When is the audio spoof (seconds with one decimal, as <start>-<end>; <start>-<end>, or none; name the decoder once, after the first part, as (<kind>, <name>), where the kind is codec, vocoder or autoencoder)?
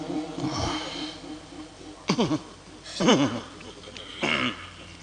0.6-3.1 (vocoder, BigVGAN v2)